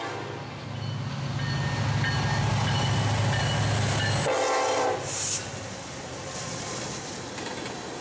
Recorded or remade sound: recorded